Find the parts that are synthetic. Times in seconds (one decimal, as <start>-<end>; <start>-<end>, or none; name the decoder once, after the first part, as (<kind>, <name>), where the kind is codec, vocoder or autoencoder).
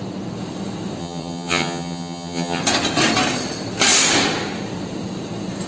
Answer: 1.0-2.6 (vocoder, HiFi-GAN)